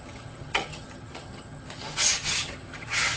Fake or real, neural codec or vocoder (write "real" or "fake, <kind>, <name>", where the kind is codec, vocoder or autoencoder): fake, vocoder, HiFi-GAN